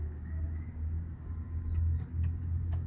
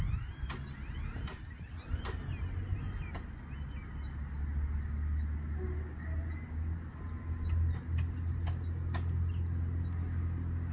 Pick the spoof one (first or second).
first